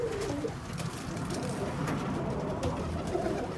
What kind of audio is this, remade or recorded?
recorded